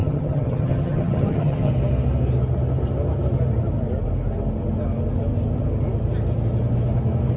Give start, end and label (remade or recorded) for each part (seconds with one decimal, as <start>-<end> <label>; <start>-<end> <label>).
0.0-1.7 remade; 1.7-7.4 recorded